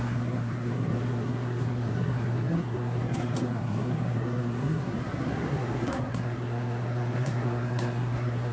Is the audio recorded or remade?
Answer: remade